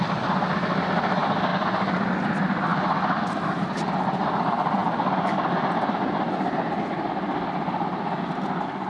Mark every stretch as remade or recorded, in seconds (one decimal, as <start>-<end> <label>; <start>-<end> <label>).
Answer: 0.0-8.9 recorded